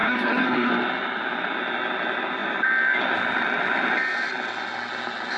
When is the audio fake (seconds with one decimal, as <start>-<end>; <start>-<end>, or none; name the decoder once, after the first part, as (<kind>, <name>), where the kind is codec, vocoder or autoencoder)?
0.0-0.7 (codec, SNAC)